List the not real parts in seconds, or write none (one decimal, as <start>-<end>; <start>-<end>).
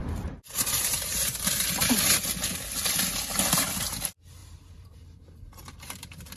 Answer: 0.0-2.2; 4.4-6.4